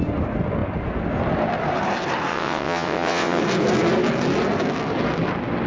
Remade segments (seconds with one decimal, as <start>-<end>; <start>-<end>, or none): 2.3-3.4